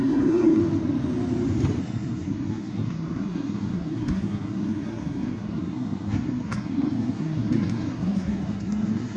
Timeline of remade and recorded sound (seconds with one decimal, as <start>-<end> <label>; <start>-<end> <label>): 0.0-0.6 remade; 0.6-1.8 recorded; 1.8-9.2 remade